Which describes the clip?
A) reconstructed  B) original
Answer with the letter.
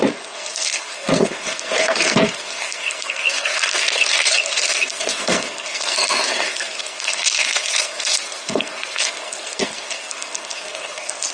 A